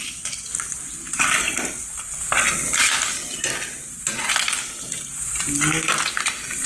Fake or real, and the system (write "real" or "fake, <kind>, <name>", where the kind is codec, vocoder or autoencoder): real